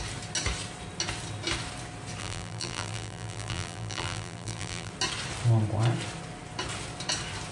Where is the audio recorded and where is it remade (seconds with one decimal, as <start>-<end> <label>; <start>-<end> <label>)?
0.0-2.2 recorded; 2.2-4.9 remade; 4.9-7.5 recorded